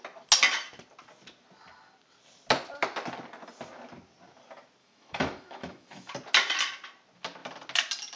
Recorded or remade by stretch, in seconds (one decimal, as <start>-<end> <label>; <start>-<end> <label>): 0.0-4.8 recorded; 4.8-6.1 remade; 6.1-8.2 recorded